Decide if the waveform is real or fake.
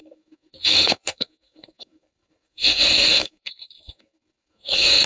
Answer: fake